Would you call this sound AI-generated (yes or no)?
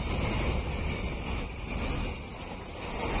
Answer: no